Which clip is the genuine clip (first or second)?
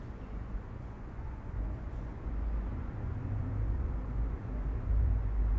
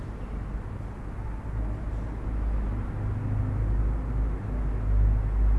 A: second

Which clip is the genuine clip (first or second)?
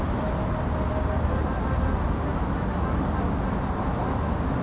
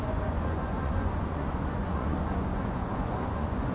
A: first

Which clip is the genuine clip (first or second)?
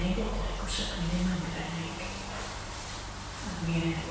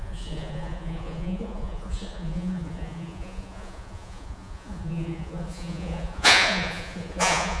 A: first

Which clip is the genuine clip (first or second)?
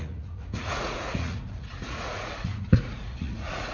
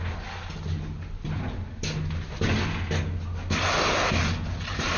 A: second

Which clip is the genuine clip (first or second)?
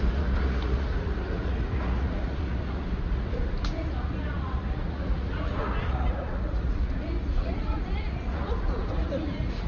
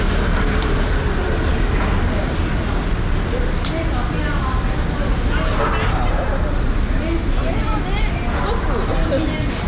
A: second